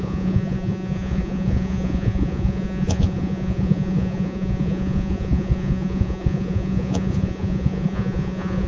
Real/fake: fake